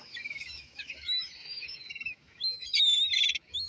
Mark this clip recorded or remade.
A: remade